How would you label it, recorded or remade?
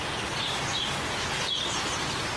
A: recorded